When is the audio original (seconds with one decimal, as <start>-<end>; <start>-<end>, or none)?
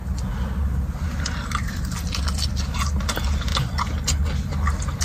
0.0-5.0